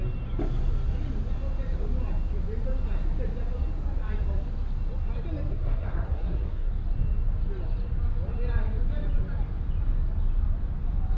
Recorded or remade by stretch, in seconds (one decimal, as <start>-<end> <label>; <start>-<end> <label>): 0.0-5.5 recorded; 5.5-6.7 remade; 6.7-11.2 recorded